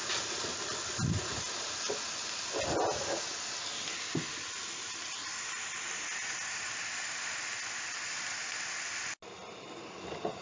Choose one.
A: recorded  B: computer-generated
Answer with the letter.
A